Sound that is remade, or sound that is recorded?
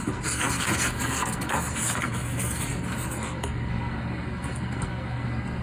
remade